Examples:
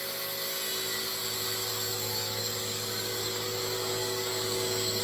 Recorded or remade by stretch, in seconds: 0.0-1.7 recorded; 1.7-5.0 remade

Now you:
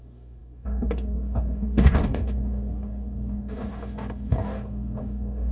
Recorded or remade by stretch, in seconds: 0.0-5.5 remade